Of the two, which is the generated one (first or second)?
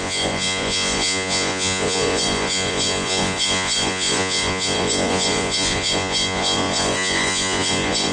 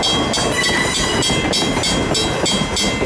first